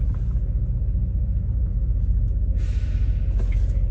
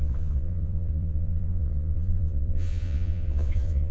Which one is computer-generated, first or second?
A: second